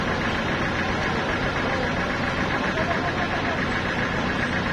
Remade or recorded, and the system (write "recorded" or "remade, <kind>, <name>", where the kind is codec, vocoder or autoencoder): recorded